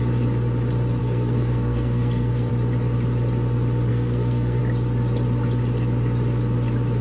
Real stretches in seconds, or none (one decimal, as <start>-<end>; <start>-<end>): 0.0-1.0; 2.5-3.9; 4.6-7.0